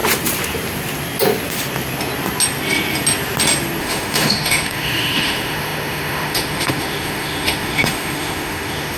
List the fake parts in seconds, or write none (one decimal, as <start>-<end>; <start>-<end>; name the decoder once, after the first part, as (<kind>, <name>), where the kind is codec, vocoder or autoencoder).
3.8-9.0 (autoencoder, DAC-VAE)